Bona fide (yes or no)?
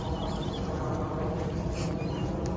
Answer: yes